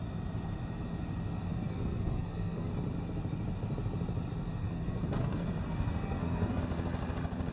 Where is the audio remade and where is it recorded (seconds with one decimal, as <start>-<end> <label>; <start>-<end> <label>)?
0.0-1.5 recorded; 1.5-2.7 remade; 2.7-4.6 recorded; 4.6-6.6 remade; 6.6-7.5 recorded